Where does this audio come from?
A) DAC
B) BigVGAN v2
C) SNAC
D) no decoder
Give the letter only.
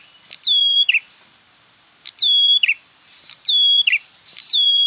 B